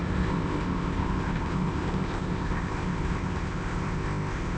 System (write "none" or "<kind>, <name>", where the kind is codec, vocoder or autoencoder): codec, ZipCodec